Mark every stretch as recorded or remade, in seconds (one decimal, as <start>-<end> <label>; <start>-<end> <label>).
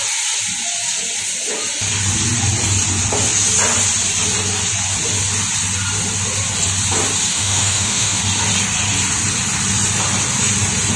0.0-7.3 recorded; 7.3-8.2 remade; 8.2-11.0 recorded